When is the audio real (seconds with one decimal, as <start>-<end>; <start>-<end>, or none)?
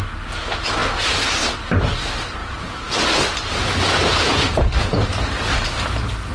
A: 0.0-2.4; 3.0-4.1; 4.6-6.3